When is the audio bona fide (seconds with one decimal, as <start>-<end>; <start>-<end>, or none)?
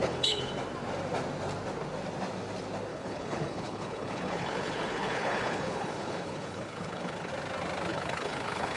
0.5-2.9; 7.3-7.9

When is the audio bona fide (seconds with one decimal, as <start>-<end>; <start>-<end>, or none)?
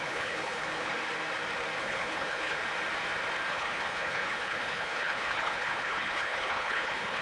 1.0-1.8; 2.6-3.5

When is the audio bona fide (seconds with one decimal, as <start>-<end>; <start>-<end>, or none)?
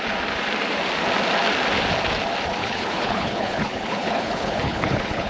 0.0-2.6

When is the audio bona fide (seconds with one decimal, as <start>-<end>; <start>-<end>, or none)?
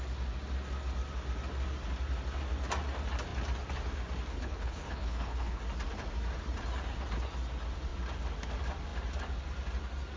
0.0-4.3; 5.6-10.2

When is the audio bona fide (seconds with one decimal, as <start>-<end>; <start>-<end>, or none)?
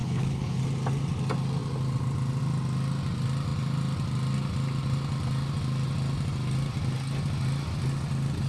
0.6-8.5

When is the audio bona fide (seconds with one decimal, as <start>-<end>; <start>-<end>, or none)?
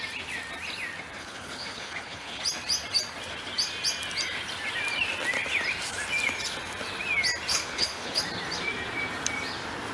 0.0-1.2; 2.4-7.5; 8.2-9.9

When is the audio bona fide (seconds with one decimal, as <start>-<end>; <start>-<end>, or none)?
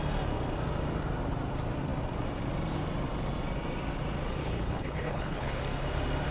0.0-4.4; 5.6-6.3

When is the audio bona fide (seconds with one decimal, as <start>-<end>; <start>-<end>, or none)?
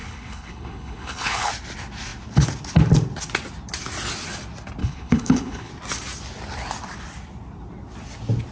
1.5-4.8; 5.7-8.5